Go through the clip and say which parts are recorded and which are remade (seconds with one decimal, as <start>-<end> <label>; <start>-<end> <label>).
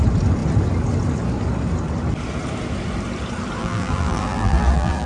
0.0-3.6 recorded; 3.6-5.1 remade